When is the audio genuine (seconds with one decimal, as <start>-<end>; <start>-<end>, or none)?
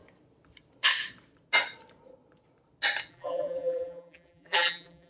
0.0-3.1